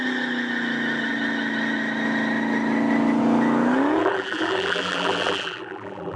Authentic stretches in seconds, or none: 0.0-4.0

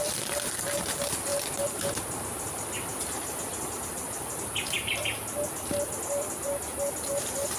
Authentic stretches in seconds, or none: 0.0-7.6

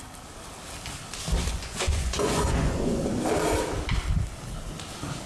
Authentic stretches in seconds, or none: 0.0-1.5; 3.0-5.3